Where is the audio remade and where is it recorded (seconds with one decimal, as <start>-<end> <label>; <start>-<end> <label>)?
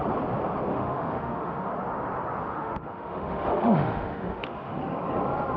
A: 0.0-0.7 recorded; 0.7-1.7 remade; 1.7-2.4 recorded; 2.4-4.8 remade; 4.8-5.6 recorded